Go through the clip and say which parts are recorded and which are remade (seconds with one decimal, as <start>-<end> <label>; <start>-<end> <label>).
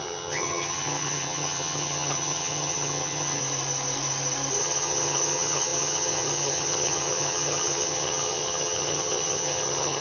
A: 0.0-3.4 remade; 3.4-4.6 recorded; 4.6-10.0 remade